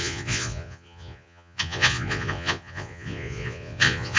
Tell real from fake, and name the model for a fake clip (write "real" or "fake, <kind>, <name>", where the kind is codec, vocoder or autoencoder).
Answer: fake, vocoder, Vocos